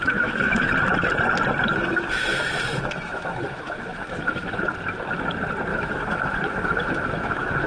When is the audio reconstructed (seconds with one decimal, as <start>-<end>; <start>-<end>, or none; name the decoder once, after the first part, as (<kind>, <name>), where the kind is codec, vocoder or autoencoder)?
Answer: 0.0-0.7 (autoencoder, DAC-VAE); 1.7-4.6; 5.7-7.7